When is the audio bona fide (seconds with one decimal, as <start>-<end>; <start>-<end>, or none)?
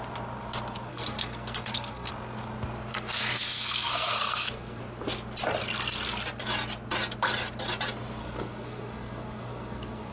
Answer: 0.0-0.9; 2.1-2.9; 4.8-8.2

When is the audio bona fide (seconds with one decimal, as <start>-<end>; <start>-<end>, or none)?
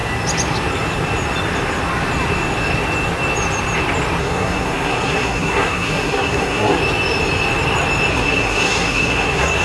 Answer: 0.0-4.2; 6.8-8.1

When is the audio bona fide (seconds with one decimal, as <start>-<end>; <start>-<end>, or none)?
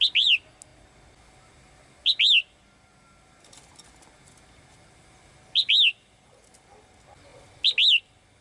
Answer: 0.0-8.4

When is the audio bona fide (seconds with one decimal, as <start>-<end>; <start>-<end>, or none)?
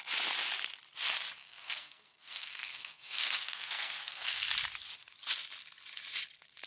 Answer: 0.0-1.4; 4.4-6.7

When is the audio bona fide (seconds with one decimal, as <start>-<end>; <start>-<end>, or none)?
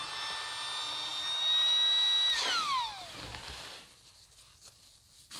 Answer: 0.0-5.4